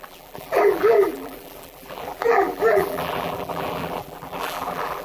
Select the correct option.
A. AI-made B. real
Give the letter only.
A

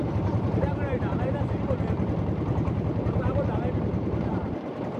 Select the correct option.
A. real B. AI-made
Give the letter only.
B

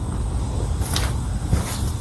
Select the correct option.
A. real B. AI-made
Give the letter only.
A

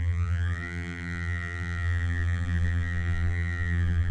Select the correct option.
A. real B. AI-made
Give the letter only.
B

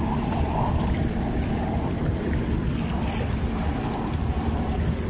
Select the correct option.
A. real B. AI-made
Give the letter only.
B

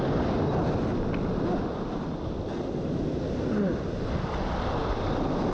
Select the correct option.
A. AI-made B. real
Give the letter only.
B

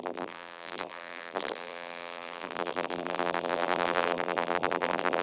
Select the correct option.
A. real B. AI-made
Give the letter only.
B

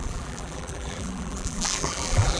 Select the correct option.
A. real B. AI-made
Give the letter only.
B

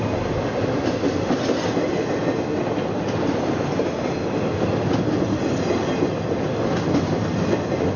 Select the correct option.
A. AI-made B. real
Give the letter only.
B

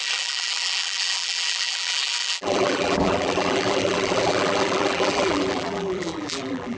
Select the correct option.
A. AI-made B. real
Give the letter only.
A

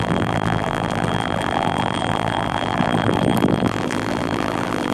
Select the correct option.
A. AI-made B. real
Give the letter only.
A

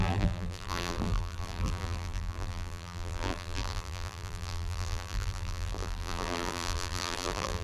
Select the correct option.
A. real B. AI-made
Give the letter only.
B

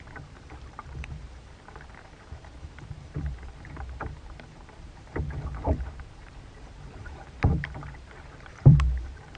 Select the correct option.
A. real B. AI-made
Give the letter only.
B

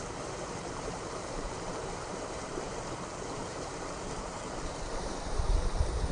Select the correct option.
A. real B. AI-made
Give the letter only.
B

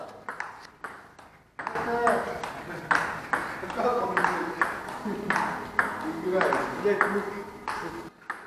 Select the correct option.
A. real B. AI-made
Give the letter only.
A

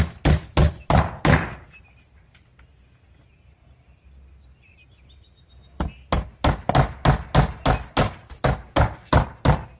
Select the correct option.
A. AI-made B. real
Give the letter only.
B